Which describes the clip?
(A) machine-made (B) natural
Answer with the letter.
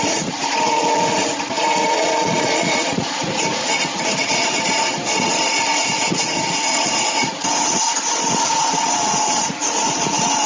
A